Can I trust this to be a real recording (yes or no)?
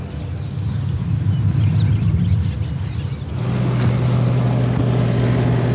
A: yes